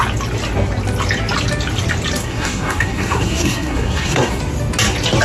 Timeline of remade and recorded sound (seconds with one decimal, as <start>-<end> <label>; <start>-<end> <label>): 0.0-2.2 recorded; 2.2-4.4 remade; 4.4-5.2 recorded